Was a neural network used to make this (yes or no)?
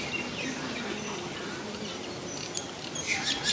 no